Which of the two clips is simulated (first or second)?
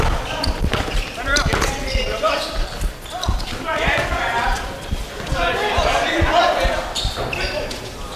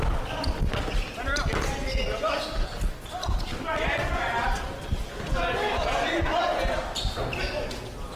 first